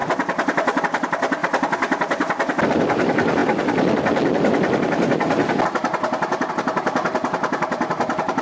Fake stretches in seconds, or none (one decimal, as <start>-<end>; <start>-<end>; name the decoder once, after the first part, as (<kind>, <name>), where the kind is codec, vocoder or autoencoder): 0.8-1.4 (vocoder, BigVGAN v2); 2.7-3.4; 6.5-8.4